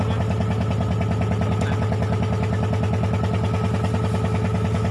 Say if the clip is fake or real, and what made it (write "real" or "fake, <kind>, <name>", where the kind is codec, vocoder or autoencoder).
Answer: real